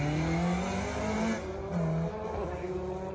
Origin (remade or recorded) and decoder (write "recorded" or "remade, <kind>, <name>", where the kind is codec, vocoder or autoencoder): recorded